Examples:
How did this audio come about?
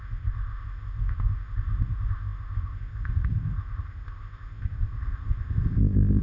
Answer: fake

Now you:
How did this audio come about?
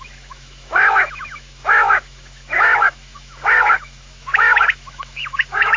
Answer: fake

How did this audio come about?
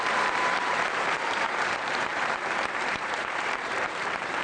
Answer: fake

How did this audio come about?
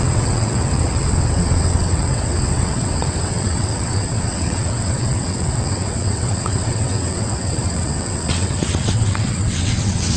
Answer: fake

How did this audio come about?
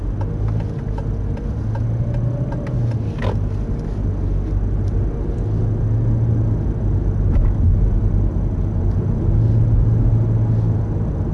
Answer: real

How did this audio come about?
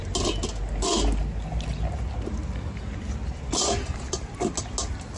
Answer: real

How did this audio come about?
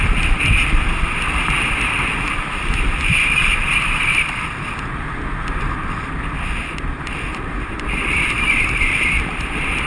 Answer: fake